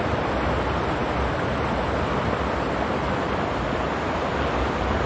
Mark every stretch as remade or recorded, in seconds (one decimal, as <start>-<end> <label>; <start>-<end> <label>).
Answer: 0.0-5.1 recorded